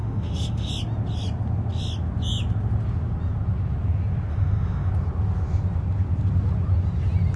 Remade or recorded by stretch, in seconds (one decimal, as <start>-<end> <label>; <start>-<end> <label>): 0.0-0.7 remade; 0.7-4.3 recorded; 4.3-4.9 remade; 4.9-7.4 recorded